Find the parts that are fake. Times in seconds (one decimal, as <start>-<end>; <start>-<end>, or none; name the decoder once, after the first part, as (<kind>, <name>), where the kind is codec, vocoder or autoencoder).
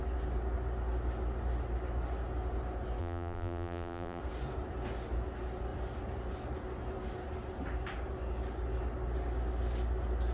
3.0-4.2 (vocoder, BigVGAN v2)